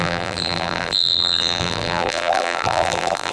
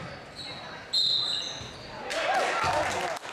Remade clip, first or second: first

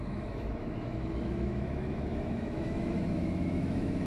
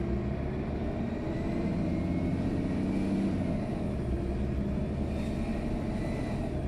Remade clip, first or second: first